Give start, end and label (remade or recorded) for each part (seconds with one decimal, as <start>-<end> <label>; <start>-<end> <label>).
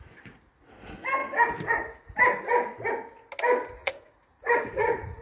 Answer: 0.0-3.8 recorded; 3.8-5.2 remade